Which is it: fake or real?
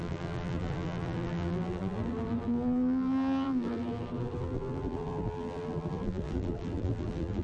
fake